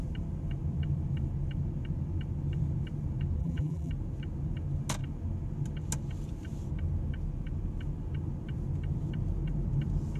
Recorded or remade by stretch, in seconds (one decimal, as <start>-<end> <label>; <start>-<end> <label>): 0.0-3.4 recorded; 3.4-3.9 remade; 3.9-10.2 recorded